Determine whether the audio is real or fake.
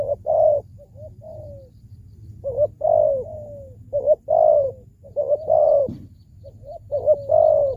real